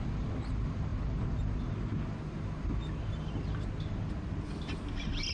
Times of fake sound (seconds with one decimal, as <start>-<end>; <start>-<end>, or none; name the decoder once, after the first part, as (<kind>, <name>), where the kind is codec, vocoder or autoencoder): none